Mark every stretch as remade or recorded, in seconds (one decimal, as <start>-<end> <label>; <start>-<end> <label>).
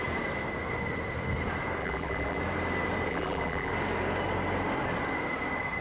0.0-1.8 recorded; 1.8-2.4 remade; 2.4-3.1 recorded; 3.1-3.7 remade; 3.7-5.8 recorded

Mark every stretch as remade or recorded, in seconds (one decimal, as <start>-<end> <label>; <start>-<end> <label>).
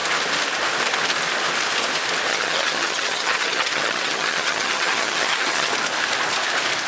0.0-2.3 recorded; 2.3-5.7 remade; 5.7-6.9 recorded